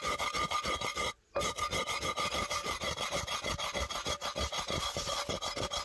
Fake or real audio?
real